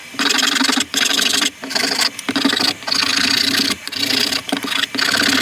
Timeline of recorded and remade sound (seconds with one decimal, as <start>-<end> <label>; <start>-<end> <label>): 0.0-2.0 remade; 2.0-3.1 recorded; 3.1-4.7 remade; 4.7-5.4 recorded